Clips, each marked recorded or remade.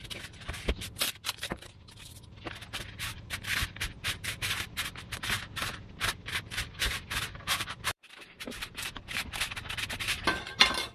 remade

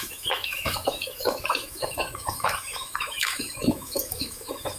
remade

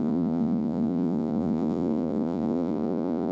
remade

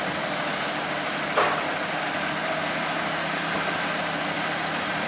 recorded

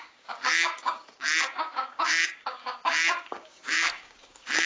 remade